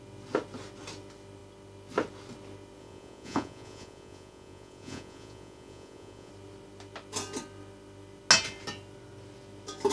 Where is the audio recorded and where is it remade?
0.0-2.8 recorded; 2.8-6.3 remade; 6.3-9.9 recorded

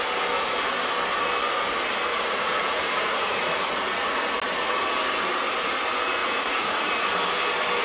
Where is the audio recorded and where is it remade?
0.0-2.1 recorded; 2.1-4.3 remade; 4.3-6.2 recorded; 6.2-7.1 remade; 7.1-7.8 recorded

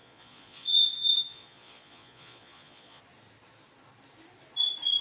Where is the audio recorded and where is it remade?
0.0-3.0 remade; 3.0-5.0 recorded

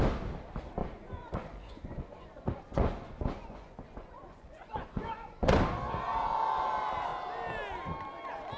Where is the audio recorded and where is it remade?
0.0-0.8 recorded; 0.8-5.6 remade; 5.6-8.6 recorded

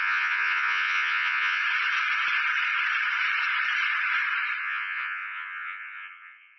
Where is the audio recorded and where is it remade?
0.0-1.6 remade; 1.6-4.6 recorded; 4.6-6.6 remade